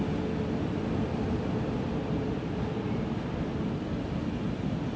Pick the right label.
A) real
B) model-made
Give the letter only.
A